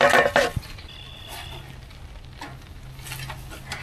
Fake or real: real